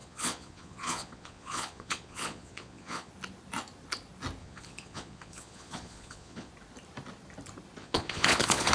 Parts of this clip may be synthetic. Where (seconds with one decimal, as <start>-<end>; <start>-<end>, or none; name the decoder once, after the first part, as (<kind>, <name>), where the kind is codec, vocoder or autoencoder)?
0.0-3.1 (vocoder, Vocos); 4.4-6.5; 7.8-8.7